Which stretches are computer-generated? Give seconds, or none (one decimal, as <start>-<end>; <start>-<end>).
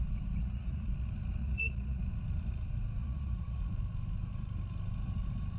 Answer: 0.4-0.9; 1.4-2.0; 3.0-3.6